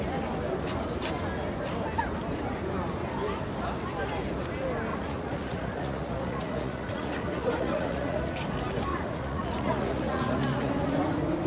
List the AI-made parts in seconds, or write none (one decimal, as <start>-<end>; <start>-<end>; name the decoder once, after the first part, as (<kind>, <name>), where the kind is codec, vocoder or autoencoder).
4.9-8.2 (vocoder, Vocos); 8.9-10.7